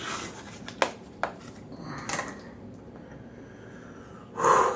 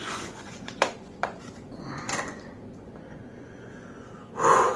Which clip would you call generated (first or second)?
second